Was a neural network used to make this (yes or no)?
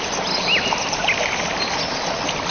no